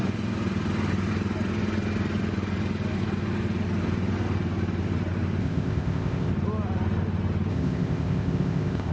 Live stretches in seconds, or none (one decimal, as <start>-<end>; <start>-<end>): 0.0-5.4; 6.3-7.5

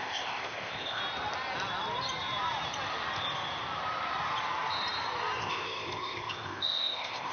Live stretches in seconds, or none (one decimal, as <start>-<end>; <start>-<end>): 1.0-5.4

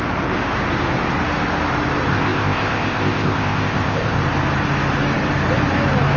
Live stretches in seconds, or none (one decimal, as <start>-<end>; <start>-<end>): 0.0-2.1; 4.2-6.2

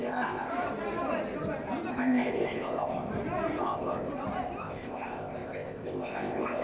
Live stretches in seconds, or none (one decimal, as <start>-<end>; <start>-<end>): 0.5-1.9; 3.1-3.6; 4.1-4.6

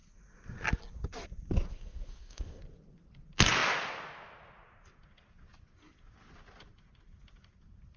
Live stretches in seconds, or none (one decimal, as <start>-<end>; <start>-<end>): 0.0-1.7; 2.6-8.0

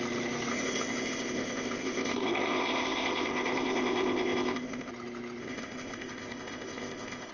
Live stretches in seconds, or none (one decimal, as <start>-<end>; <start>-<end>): 0.0-0.5; 4.9-5.4